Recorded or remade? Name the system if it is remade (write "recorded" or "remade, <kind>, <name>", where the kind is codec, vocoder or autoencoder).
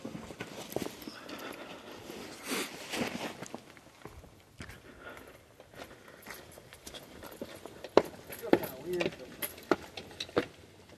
recorded